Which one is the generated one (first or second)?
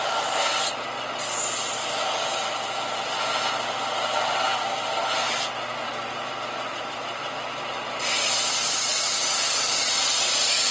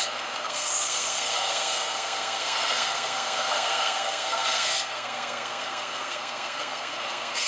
second